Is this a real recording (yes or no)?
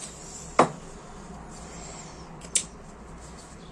yes